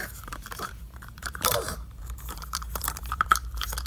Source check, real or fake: fake